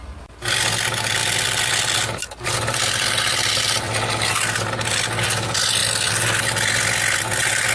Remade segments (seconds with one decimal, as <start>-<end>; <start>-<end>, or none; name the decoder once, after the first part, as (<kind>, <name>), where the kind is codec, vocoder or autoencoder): none